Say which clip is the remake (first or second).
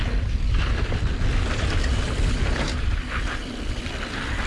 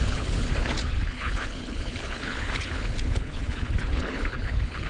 second